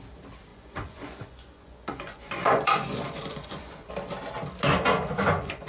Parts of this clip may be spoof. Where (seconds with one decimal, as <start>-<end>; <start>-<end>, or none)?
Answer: 0.5-3.9; 4.7-5.7